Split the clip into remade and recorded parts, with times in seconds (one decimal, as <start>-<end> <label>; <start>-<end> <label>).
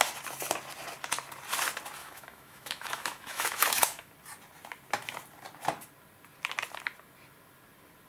0.0-2.0 recorded; 2.0-4.1 remade; 4.1-8.1 recorded